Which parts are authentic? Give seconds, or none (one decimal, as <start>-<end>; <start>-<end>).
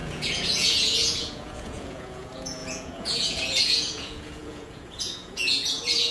none